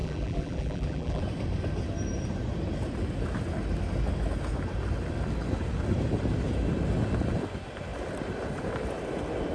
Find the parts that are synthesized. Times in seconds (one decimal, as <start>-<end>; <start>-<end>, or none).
0.0-1.2